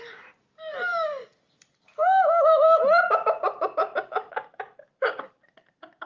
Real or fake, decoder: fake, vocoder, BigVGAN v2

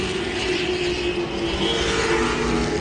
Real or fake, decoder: real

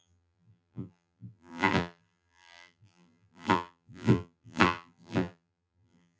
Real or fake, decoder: fake, vocoder, BigVGAN v2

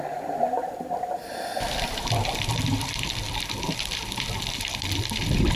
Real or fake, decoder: fake, vocoder, BigVGAN v2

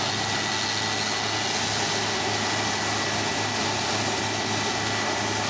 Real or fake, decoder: real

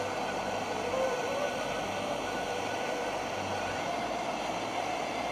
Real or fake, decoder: real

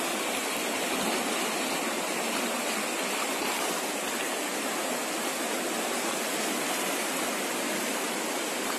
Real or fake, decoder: real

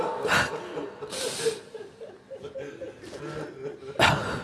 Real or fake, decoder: real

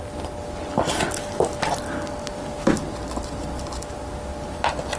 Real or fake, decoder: real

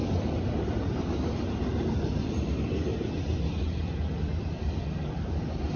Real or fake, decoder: fake, vocoder, BigVGAN v2